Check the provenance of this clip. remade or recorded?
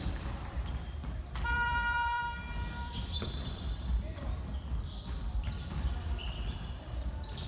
remade